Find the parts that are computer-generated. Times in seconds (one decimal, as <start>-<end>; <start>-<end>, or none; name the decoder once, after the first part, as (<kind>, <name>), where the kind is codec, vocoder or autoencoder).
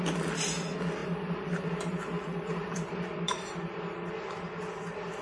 1.0-4.1 (vocoder, BigVGAN v2)